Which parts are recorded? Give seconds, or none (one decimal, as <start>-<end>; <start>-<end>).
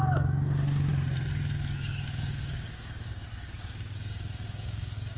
0.9-1.8